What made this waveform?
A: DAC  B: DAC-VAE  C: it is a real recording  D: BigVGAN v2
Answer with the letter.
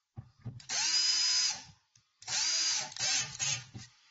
C